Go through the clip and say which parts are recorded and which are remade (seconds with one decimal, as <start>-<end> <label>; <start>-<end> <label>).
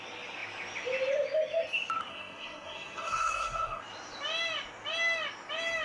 0.0-2.1 recorded; 2.1-3.8 remade; 3.8-5.8 recorded